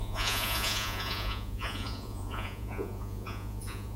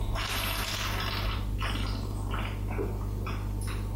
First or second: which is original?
second